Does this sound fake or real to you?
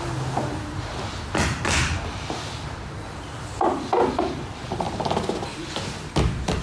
real